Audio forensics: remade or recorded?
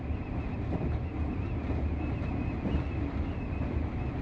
recorded